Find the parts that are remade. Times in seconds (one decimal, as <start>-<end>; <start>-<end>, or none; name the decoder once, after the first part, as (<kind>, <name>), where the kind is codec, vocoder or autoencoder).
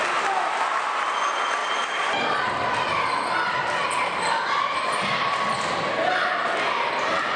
none